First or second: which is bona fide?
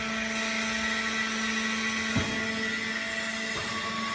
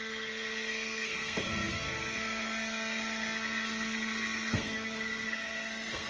first